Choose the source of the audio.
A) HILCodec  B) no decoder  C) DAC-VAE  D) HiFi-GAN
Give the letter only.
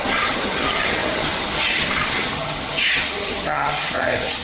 D